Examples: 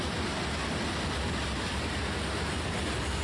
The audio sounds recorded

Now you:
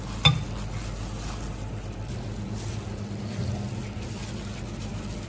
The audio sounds recorded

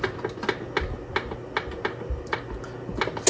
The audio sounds recorded